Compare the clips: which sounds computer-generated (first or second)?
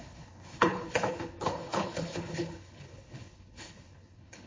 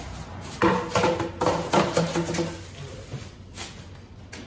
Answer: first